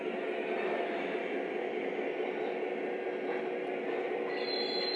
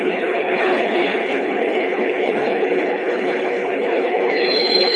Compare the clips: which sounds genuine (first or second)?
first